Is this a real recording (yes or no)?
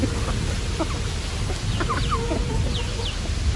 yes